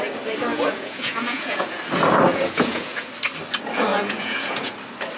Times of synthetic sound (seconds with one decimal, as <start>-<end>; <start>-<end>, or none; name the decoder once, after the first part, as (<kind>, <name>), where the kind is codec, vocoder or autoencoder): 0.5-1.8 (vocoder, Vocos); 2.3-3.1; 3.9-4.7